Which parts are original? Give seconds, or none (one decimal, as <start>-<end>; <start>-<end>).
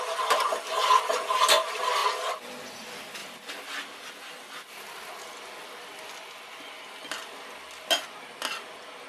0.0-9.1